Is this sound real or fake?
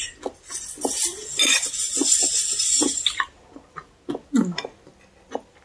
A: real